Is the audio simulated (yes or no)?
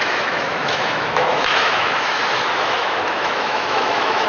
yes